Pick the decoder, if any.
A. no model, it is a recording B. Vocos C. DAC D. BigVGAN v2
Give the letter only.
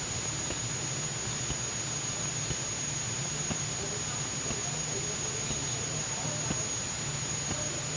A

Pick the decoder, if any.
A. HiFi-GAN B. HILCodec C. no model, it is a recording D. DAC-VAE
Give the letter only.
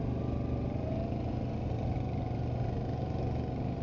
C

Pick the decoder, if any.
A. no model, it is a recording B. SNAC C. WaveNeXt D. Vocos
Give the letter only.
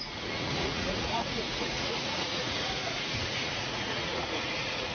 D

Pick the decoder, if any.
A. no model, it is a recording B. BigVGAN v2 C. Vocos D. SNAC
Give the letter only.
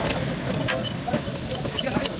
A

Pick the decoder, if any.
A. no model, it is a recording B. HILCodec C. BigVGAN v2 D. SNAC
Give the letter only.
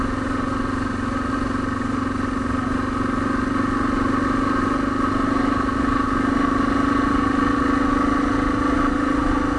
A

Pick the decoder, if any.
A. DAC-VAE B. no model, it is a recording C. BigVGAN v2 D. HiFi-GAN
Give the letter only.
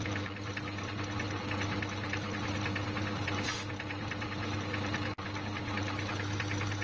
B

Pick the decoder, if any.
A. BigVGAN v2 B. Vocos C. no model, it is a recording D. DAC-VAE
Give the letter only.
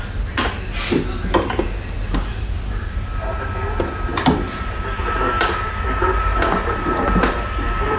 C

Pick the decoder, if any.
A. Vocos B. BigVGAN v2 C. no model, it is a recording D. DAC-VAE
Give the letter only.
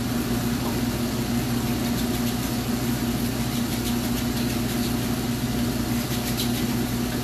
C